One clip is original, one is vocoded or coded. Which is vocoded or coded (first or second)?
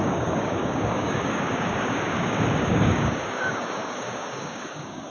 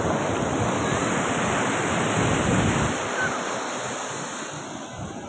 first